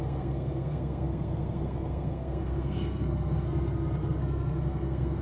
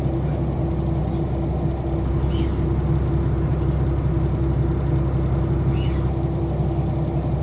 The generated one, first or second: first